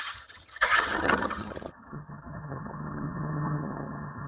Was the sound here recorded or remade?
remade